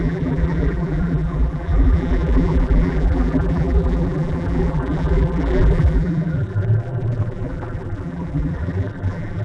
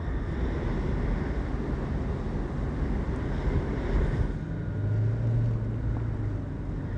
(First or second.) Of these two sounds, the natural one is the second